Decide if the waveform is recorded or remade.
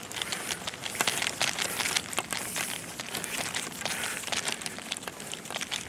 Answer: recorded